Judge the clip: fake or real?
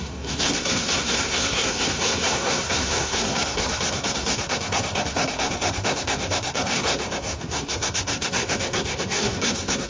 fake